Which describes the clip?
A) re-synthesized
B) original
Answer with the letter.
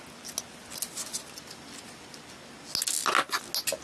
B